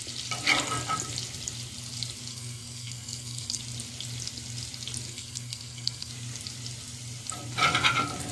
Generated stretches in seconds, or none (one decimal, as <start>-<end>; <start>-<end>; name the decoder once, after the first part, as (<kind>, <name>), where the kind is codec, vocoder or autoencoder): 2.3-3.6 (codec, SNAC); 5.1-6.1